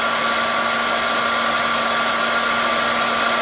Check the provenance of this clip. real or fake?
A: real